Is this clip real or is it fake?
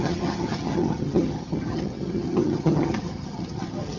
fake